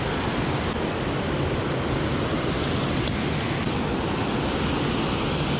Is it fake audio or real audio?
real